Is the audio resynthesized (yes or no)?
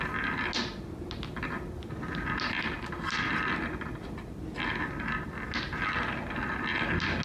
no